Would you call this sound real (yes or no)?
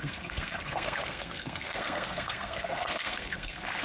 no